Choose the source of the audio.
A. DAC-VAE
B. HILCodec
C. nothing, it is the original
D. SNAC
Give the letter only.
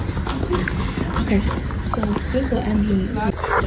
C